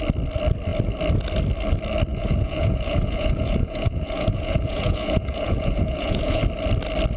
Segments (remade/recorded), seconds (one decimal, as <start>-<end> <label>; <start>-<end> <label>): 0.0-2.1 recorded; 2.1-6.4 remade; 6.4-7.2 recorded